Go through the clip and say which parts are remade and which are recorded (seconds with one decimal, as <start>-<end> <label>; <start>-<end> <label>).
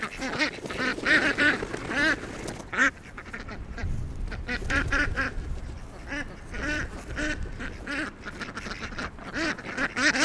0.0-0.9 recorded; 0.9-1.6 remade; 1.6-2.8 recorded; 2.8-7.6 remade; 7.6-10.2 recorded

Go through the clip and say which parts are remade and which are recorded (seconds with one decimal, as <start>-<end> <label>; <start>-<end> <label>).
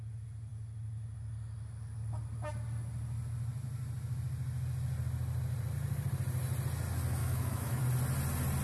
0.0-7.2 recorded; 7.2-7.8 remade; 7.8-8.6 recorded